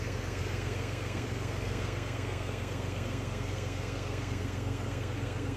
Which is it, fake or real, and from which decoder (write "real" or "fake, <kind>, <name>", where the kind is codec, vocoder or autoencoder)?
fake, codec, SNAC